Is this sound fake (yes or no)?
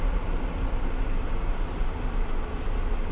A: no